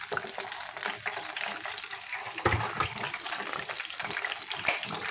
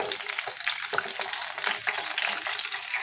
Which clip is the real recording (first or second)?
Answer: second